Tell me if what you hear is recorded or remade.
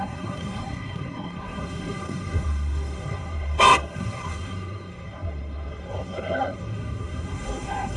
remade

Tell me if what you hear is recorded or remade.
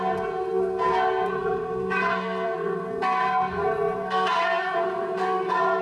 remade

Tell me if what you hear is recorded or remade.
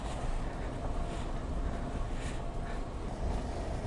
recorded